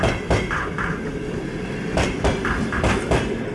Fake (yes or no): no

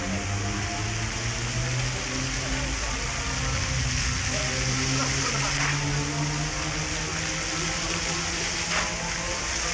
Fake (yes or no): no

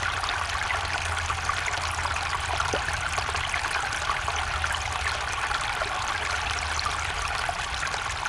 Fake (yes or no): no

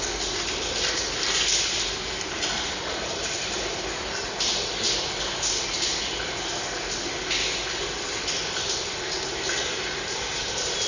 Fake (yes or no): no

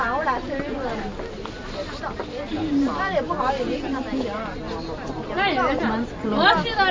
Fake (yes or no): no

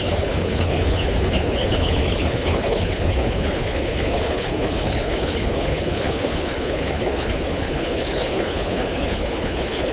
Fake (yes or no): yes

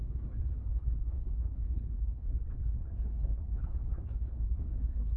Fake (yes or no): yes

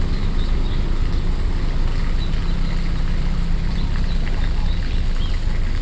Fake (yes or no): no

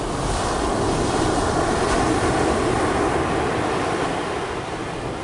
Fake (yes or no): no